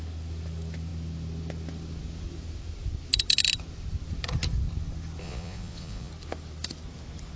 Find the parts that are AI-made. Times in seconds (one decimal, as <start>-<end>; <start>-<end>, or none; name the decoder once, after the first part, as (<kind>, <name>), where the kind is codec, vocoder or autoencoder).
5.2-6.1 (vocoder, Vocos)